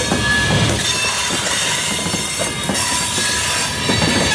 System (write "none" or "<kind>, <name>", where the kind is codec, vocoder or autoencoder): none